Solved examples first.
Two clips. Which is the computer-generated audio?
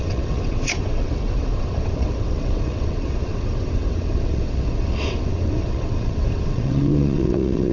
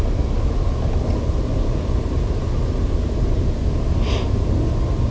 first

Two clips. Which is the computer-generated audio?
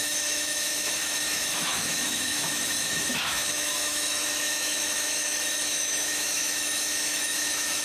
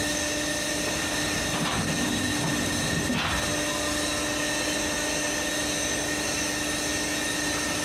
first